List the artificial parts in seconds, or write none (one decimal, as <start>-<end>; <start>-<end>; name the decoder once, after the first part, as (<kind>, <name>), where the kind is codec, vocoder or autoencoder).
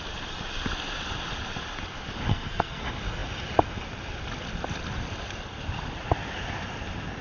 2.3-2.8 (codec, SNAC)